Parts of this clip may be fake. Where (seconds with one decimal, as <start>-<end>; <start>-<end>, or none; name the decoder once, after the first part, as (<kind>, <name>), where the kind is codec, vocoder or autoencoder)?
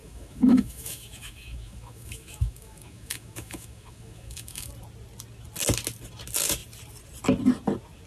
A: 0.0-4.7 (autoencoder, DAC-VAE)